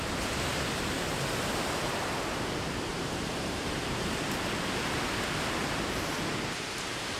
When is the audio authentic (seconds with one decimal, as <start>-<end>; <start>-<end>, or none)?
0.0-0.5; 1.0-2.9; 5.1-7.2

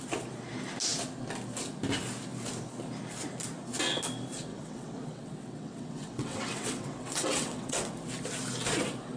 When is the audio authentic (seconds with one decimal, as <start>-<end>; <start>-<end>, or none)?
0.0-4.5; 7.9-9.2